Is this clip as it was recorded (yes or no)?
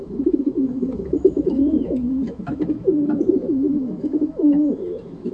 no